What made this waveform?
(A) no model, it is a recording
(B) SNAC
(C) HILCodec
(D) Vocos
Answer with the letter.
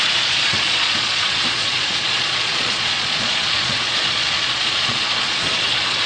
D